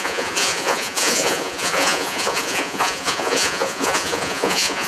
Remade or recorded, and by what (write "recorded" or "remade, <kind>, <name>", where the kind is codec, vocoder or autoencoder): remade, vocoder, Vocos